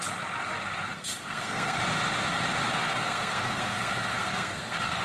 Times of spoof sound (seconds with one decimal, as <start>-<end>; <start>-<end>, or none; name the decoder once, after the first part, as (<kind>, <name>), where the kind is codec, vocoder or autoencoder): 0.9-1.8 (codec, SNAC); 2.8-5.0